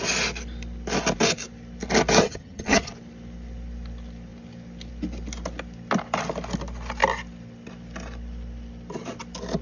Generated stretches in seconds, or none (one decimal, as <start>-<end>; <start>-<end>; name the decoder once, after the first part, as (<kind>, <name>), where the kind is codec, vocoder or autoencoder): 2.2-2.9 (vocoder, HiFi-GAN)